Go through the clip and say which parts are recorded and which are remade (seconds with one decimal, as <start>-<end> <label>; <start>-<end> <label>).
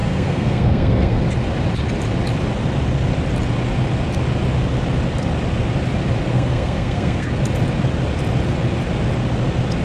0.0-1.2 remade; 1.2-6.3 recorded; 6.3-7.3 remade; 7.3-9.8 recorded